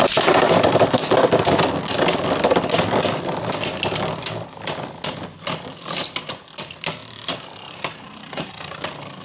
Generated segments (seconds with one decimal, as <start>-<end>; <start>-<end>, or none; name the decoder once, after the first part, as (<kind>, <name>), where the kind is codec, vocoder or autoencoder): 0.0-1.0 (vocoder, BigVGAN v2); 7.0-8.5